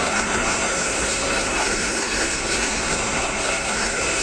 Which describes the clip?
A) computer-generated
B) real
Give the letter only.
A